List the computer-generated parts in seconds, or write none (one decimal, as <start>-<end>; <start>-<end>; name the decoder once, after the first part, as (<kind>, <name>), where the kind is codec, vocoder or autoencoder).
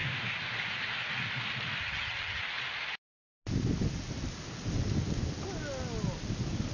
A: 1.8-2.4 (vocoder, HiFi-GAN)